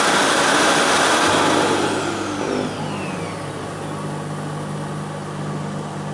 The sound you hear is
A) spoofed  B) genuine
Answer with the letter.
B